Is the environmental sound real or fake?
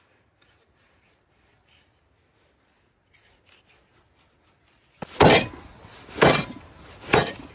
real